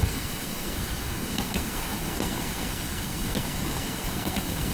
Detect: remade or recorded remade